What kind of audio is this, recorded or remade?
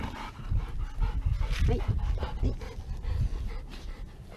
recorded